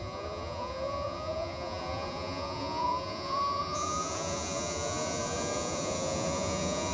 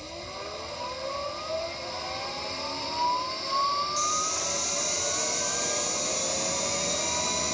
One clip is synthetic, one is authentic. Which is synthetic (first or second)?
first